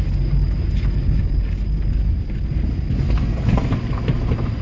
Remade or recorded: recorded